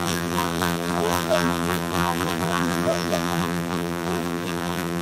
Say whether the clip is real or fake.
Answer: fake